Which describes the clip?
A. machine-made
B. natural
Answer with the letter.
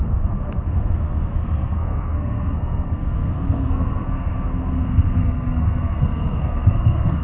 A